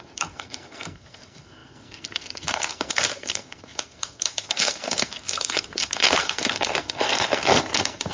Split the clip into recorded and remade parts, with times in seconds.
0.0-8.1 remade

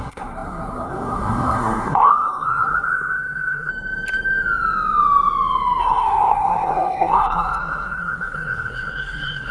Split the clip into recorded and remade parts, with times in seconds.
0.0-3.7 remade; 3.7-5.8 recorded; 5.8-9.5 remade

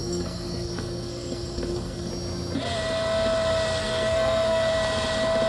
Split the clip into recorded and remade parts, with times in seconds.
0.0-2.1 remade; 2.1-3.8 recorded; 3.8-4.7 remade; 4.7-5.5 recorded

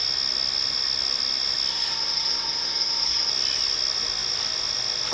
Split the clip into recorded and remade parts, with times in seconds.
0.0-1.7 recorded; 1.7-3.3 remade; 3.3-5.1 recorded